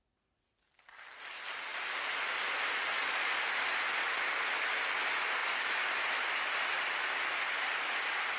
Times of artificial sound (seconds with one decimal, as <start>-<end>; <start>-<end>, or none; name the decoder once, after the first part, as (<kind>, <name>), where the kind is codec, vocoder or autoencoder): 5.4-6.5 (vocoder, BigVGAN v2)